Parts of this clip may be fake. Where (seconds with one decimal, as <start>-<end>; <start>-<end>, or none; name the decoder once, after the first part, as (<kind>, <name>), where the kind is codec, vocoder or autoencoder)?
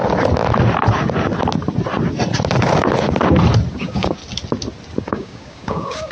3.7-4.2 (codec, DAC); 5.0-6.1